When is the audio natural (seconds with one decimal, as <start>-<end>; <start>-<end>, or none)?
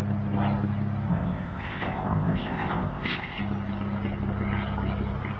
0.0-1.1; 3.4-5.4